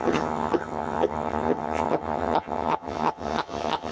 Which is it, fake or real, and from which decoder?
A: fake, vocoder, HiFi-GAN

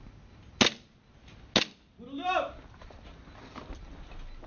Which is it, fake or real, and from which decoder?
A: real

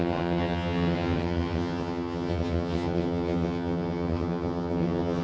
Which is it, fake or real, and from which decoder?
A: fake, vocoder, HiFi-GAN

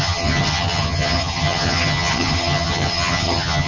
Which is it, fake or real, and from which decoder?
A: fake, vocoder, HiFi-GAN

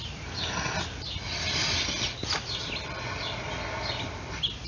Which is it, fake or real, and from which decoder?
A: real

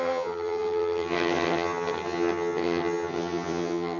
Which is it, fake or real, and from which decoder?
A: fake, vocoder, HiFi-GAN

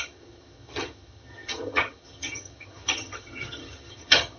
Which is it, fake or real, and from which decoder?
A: fake, vocoder, HiFi-GAN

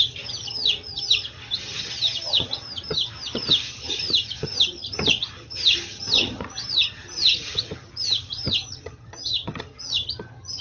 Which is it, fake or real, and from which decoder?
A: fake, vocoder, HiFi-GAN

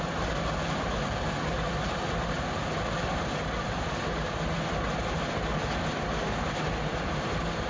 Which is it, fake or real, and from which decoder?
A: real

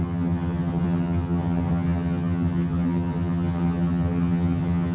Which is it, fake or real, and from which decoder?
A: fake, vocoder, HiFi-GAN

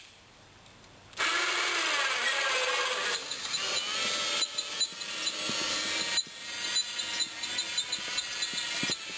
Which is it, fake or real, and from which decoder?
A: real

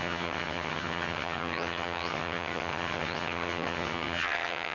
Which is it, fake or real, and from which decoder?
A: fake, vocoder, HiFi-GAN